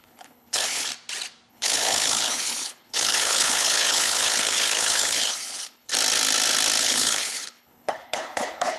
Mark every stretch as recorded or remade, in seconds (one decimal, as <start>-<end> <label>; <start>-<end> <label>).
0.0-0.9 remade; 0.9-1.5 recorded; 1.5-5.9 remade; 5.9-6.8 recorded; 6.8-8.8 remade